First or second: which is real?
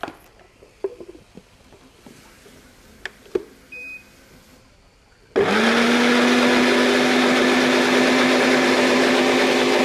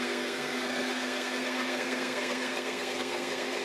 first